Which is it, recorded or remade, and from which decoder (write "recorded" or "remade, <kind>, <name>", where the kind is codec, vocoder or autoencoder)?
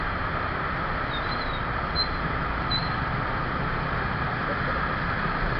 recorded